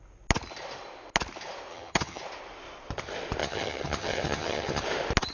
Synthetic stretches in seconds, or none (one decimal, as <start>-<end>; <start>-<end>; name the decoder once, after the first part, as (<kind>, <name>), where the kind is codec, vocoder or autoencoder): 1.7-2.2 (vocoder, HiFi-GAN); 3.4-4.8